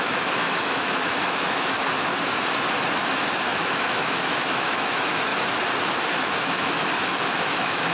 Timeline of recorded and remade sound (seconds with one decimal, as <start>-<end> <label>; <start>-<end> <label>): 0.0-2.1 remade; 2.1-3.5 recorded; 3.5-5.3 remade; 5.3-6.1 recorded; 6.1-7.9 remade